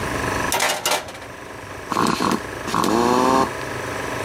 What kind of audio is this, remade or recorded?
recorded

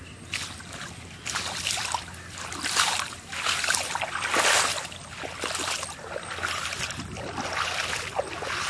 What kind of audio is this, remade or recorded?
recorded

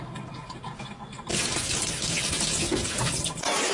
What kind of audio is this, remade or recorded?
recorded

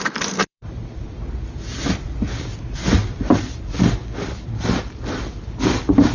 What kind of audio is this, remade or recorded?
remade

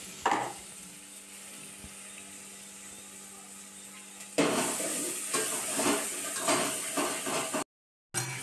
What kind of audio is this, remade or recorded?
recorded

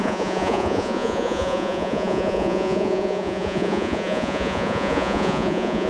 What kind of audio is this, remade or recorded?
remade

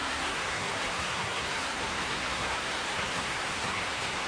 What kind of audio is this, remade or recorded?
remade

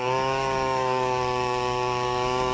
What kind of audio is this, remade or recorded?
remade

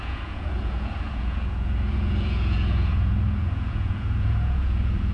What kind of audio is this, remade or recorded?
remade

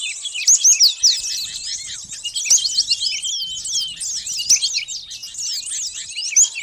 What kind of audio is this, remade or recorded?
recorded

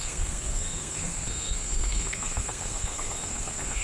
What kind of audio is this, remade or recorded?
remade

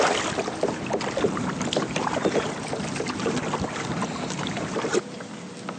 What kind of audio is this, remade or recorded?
recorded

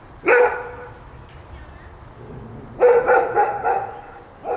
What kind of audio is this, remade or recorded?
recorded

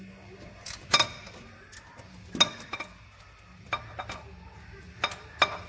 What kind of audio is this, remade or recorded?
recorded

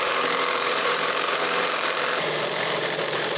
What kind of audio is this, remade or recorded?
remade